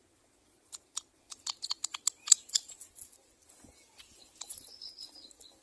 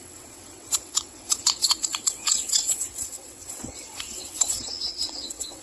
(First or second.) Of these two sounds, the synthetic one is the second